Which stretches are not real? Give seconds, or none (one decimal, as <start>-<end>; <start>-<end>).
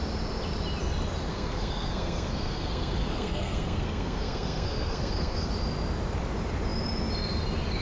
1.3-5.5